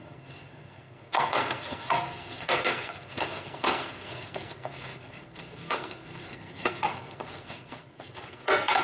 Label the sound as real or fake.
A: fake